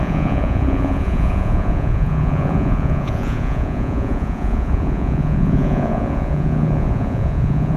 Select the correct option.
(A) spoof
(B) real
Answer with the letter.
A